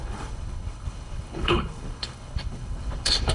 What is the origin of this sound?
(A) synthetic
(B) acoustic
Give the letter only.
A